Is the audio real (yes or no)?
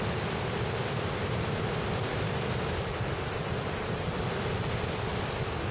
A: yes